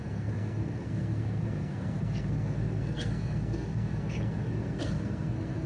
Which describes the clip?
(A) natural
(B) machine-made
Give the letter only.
B